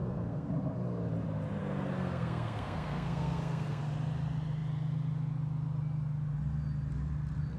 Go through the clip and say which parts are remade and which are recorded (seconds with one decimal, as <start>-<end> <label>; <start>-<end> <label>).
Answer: 0.0-0.5 remade; 0.5-1.6 recorded; 1.6-3.8 remade; 3.8-7.6 recorded